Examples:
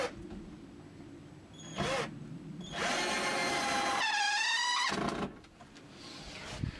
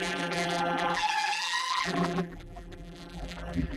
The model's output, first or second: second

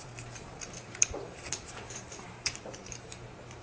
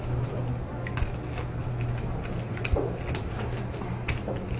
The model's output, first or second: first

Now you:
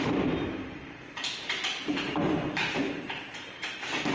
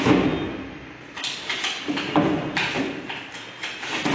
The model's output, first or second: first